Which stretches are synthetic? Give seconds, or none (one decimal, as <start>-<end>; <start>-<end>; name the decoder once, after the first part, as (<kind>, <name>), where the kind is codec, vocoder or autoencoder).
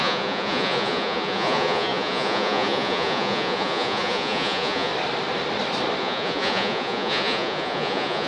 0.0-4.9 (vocoder, Vocos); 6.0-8.3